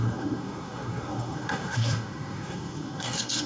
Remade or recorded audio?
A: remade